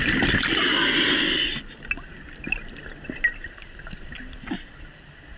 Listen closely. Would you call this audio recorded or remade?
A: recorded